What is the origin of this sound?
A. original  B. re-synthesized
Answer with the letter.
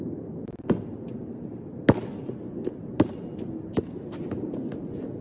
A